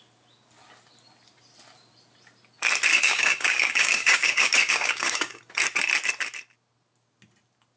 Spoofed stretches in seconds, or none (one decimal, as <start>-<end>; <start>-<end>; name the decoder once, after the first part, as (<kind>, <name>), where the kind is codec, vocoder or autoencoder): 2.9-5.4 (codec, DAC)